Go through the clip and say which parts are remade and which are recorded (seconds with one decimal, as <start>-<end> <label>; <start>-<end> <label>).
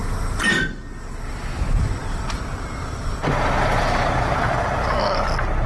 0.0-5.7 recorded